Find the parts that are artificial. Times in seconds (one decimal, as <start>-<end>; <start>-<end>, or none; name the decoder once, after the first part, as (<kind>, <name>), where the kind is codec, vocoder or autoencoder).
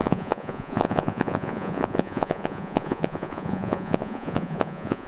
0.0-5.1 (vocoder, Vocos)